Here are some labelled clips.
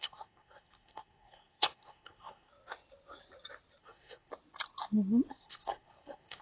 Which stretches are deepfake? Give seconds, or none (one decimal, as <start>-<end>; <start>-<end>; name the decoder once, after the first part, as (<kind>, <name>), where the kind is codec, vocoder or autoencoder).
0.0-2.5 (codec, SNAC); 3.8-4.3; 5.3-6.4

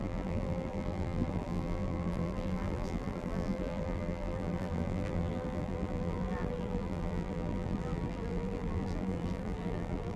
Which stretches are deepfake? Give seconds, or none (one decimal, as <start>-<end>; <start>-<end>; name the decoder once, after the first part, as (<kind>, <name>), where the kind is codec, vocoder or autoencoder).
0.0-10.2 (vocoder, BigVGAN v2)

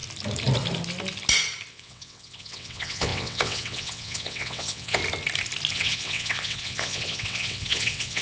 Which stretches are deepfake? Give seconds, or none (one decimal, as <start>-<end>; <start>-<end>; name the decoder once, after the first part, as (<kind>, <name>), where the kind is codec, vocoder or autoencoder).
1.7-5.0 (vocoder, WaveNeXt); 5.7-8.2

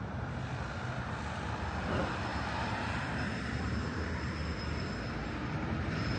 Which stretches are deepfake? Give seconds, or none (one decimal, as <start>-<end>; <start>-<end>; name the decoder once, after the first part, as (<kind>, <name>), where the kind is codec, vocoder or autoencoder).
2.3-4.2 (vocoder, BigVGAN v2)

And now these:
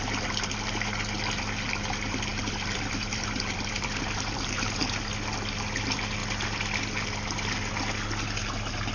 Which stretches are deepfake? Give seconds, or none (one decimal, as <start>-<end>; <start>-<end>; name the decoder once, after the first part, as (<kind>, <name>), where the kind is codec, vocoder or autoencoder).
2.3-4.8 (vocoder, BigVGAN v2); 6.2-6.8

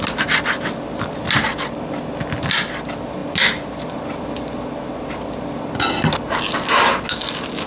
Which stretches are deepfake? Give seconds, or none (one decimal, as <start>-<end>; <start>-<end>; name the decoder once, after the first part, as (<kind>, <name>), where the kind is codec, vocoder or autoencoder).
none

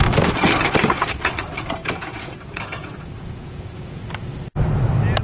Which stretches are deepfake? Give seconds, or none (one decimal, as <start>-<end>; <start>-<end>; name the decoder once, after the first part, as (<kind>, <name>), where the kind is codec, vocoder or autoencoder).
1.8-4.0 (vocoder, Vocos)